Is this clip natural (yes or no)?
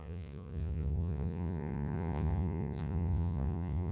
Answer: no